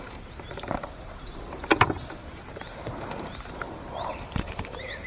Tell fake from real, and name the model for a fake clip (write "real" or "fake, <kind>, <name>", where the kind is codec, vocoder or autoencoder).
fake, vocoder, BigVGAN v2